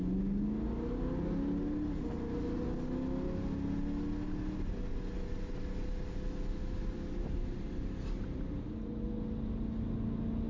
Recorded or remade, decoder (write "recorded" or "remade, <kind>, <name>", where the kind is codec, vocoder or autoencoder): recorded